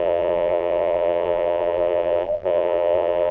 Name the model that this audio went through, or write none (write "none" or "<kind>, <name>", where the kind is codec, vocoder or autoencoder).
vocoder, BigVGAN v2